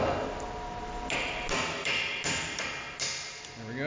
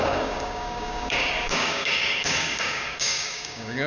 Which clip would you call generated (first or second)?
second